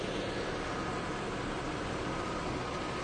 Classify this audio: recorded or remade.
recorded